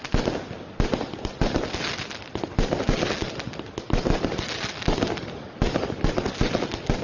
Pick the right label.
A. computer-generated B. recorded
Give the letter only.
B